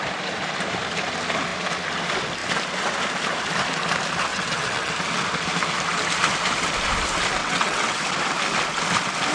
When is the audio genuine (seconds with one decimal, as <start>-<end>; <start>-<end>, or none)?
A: 0.0-4.3; 4.9-7.4; 8.0-9.3